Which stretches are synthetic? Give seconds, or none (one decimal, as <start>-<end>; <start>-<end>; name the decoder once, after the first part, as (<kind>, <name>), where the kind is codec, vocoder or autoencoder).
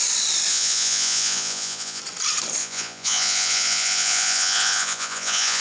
0.5-2.0 (vocoder, Vocos); 2.6-5.6